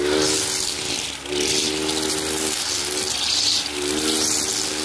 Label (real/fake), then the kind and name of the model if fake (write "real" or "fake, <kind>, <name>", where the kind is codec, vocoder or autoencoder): real